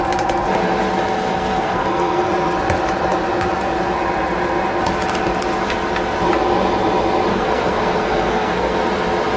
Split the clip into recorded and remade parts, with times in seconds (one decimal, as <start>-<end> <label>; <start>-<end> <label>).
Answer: 0.0-1.3 recorded; 1.3-2.3 remade; 2.3-7.3 recorded; 7.3-8.8 remade; 8.8-9.4 recorded